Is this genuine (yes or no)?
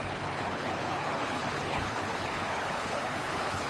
no